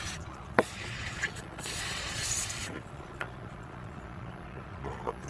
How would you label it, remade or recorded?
remade